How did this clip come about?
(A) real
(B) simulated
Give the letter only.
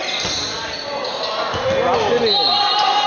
A